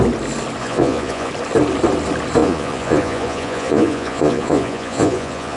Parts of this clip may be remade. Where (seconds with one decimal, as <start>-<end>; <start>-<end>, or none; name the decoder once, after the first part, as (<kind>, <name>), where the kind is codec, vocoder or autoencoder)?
0.6-1.3 (vocoder, Vocos); 2.4-5.6